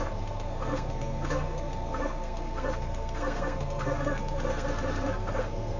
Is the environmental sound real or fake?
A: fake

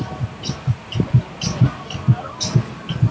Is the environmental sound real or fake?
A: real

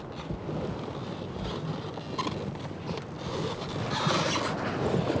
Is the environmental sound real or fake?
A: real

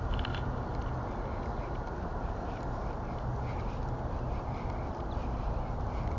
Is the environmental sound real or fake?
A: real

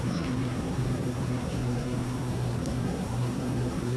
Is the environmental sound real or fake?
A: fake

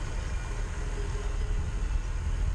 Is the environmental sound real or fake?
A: real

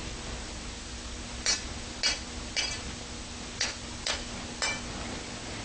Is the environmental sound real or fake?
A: real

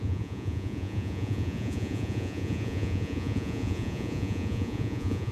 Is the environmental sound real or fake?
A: fake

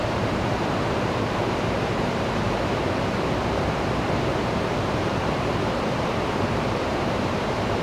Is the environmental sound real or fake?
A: fake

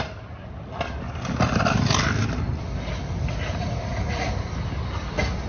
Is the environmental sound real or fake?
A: real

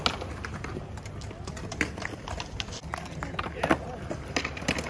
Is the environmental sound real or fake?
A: real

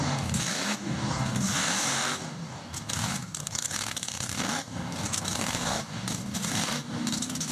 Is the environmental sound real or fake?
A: fake